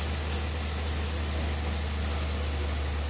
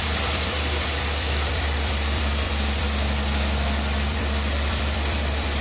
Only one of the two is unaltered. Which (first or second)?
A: first